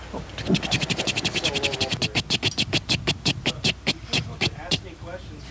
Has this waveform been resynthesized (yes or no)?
no